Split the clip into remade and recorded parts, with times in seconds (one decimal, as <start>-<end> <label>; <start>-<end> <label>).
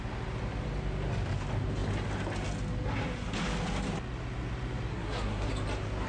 0.0-4.9 recorded; 4.9-5.5 remade; 5.5-6.1 recorded